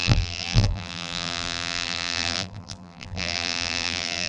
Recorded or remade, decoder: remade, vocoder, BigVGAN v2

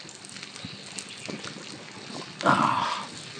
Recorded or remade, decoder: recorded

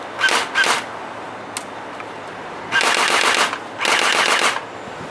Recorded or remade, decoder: recorded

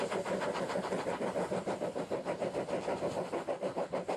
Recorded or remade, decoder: recorded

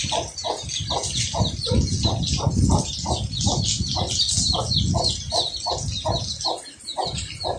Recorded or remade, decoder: recorded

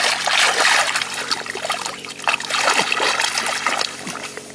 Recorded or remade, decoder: recorded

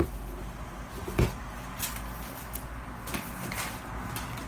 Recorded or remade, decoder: recorded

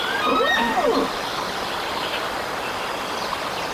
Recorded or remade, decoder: remade, vocoder, BigVGAN v2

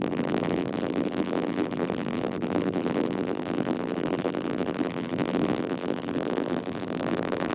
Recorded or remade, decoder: remade, vocoder, BigVGAN v2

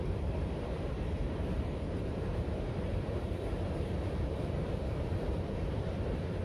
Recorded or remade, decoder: remade, vocoder, BigVGAN v2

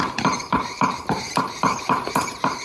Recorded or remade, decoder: remade, vocoder, BigVGAN v2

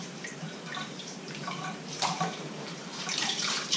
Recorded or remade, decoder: remade, vocoder, BigVGAN v2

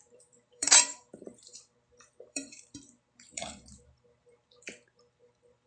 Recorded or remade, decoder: remade, vocoder, BigVGAN v2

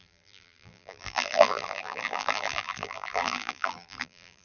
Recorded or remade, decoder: remade, vocoder, BigVGAN v2